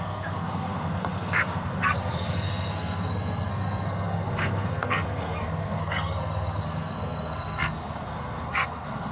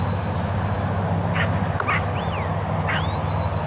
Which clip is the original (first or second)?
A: second